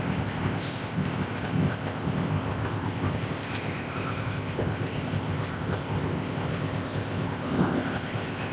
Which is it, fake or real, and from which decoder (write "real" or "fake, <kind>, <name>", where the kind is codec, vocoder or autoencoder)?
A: fake, codec, ZipCodec